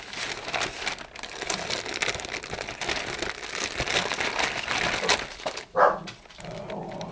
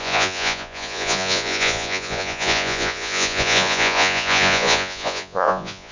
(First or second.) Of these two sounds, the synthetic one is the second